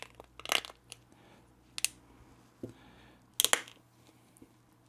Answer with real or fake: real